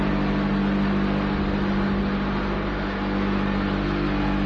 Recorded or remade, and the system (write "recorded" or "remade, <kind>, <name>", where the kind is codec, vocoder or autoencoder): recorded